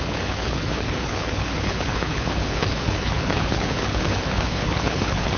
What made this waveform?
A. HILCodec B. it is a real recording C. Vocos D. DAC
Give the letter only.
A